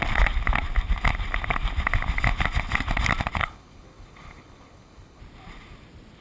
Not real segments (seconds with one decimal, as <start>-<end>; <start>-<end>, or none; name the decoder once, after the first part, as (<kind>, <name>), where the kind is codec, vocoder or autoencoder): 3.4-5.2 (codec, HILCodec)